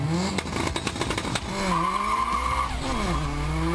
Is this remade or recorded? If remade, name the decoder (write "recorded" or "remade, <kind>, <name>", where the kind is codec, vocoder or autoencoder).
recorded